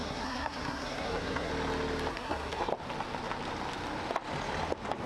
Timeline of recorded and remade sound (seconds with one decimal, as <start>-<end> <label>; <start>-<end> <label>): 0.0-1.5 remade; 1.5-2.1 recorded; 2.1-2.7 remade; 2.7-5.1 recorded